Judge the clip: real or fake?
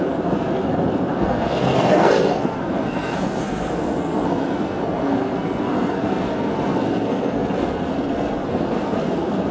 fake